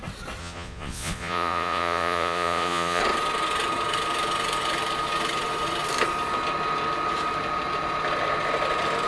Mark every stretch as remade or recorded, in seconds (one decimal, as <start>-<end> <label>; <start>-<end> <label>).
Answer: 0.0-0.4 recorded; 0.4-3.0 remade; 3.0-9.1 recorded